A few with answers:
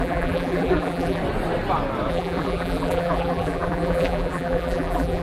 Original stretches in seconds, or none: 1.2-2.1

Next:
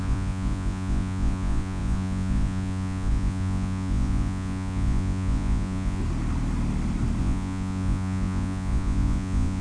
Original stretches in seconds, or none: 6.0-7.2

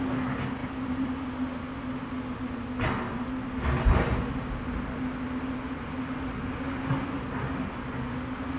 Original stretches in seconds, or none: 0.0-0.6; 1.1-8.6

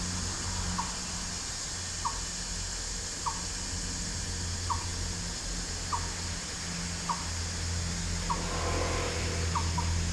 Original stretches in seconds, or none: 0.0-10.1

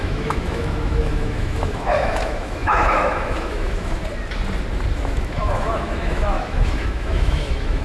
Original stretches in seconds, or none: 4.0-4.9